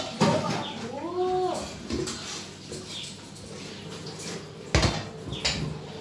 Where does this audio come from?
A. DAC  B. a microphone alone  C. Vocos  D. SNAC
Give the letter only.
B